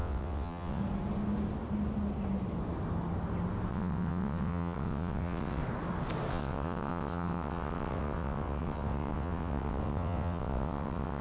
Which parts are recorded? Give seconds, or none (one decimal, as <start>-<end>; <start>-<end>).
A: 0.8-3.7; 5.6-6.3